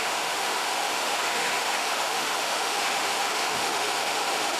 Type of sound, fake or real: fake